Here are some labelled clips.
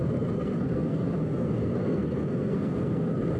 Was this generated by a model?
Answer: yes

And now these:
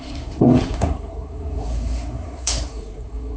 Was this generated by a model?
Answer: yes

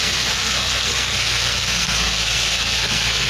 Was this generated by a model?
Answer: yes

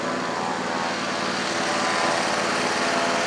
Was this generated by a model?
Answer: no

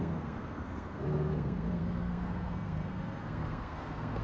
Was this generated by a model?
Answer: yes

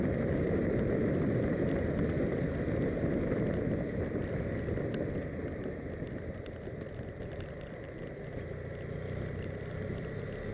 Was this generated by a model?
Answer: no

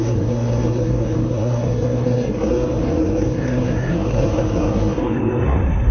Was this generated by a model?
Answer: yes